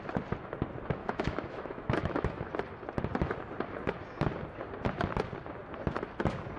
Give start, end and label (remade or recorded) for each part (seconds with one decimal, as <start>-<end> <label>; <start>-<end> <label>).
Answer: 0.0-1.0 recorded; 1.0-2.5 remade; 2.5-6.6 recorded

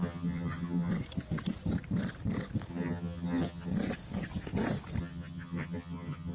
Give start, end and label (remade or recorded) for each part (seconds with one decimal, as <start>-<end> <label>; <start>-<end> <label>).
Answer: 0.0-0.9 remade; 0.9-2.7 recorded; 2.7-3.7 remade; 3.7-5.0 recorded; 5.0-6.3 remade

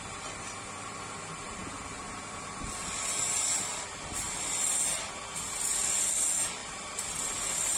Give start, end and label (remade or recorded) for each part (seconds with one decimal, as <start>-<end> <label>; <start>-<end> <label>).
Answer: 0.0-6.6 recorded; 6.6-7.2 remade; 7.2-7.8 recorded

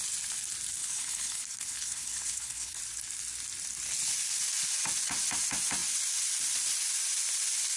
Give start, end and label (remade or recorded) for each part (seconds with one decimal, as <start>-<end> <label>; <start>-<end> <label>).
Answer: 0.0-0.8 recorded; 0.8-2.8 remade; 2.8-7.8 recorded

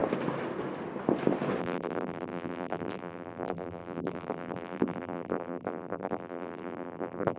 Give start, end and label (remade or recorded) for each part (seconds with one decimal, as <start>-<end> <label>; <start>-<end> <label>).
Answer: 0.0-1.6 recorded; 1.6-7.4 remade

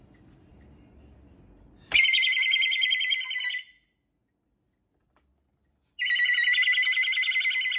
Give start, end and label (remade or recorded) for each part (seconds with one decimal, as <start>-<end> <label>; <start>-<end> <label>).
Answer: 0.0-7.8 recorded